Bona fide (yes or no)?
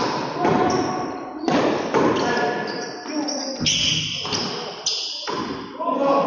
yes